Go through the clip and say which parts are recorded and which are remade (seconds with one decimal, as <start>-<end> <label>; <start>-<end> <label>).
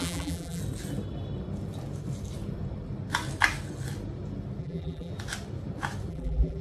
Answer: 0.0-0.6 remade; 0.6-4.6 recorded; 4.6-5.1 remade; 5.1-6.1 recorded; 6.1-6.6 remade